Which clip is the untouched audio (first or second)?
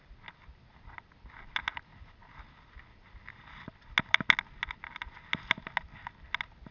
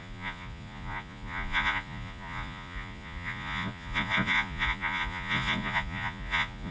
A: first